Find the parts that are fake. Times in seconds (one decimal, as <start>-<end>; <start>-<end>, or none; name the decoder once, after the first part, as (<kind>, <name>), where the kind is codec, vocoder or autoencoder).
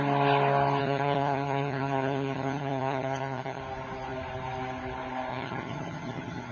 0.8-3.6 (vocoder, HiFi-GAN); 5.3-6.5